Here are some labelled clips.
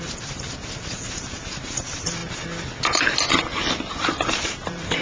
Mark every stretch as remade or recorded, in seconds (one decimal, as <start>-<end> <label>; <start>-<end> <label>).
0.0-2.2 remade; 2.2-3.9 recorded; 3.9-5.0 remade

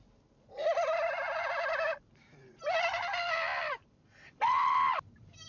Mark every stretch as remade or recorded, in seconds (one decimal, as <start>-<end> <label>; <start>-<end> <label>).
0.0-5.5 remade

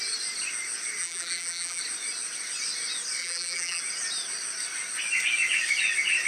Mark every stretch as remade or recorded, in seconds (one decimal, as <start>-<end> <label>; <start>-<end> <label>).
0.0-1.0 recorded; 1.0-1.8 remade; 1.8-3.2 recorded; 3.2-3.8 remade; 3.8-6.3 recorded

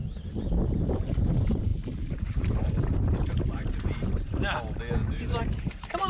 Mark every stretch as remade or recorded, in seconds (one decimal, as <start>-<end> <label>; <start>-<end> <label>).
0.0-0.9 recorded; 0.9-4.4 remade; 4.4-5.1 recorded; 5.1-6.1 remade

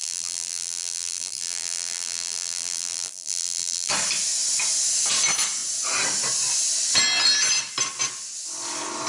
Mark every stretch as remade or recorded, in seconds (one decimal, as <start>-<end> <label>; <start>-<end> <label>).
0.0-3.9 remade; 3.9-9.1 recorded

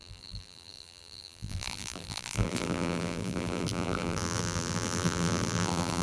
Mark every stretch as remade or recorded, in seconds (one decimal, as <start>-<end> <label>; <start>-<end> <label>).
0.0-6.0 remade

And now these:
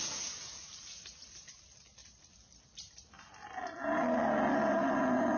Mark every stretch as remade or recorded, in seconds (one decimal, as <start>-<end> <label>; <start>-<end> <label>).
0.0-2.0 recorded; 2.0-5.0 remade; 5.0-5.4 recorded